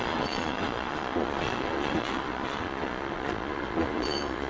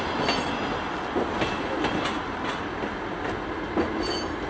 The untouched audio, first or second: second